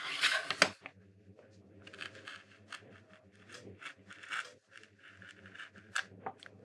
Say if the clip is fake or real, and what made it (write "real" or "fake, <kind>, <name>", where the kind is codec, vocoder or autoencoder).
real